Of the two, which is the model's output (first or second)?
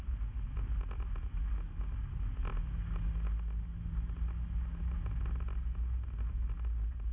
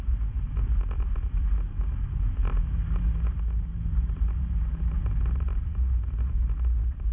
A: second